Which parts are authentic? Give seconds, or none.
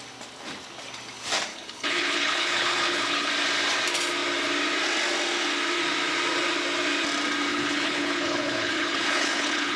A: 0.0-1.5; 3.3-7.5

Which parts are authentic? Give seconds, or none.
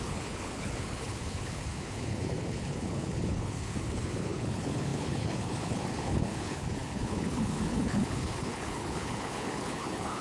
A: none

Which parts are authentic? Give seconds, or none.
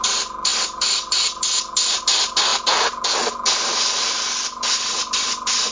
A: 0.0-5.7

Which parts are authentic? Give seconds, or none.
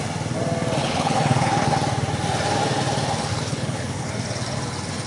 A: 0.0-0.8; 1.7-3.3; 4.1-5.1